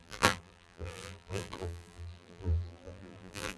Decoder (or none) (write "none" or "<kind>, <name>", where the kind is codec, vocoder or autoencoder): vocoder, BigVGAN v2